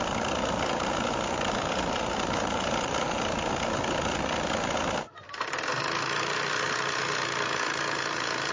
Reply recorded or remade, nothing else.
recorded